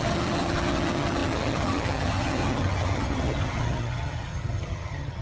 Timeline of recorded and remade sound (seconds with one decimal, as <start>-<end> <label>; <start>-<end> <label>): 0.0-5.2 remade